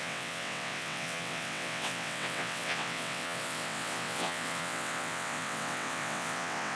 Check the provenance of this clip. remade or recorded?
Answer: remade